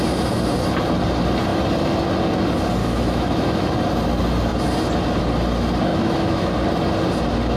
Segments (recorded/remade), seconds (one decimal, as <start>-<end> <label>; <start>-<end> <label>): 0.0-2.8 recorded; 2.8-3.7 remade; 3.7-5.9 recorded; 5.9-6.5 remade; 6.5-7.6 recorded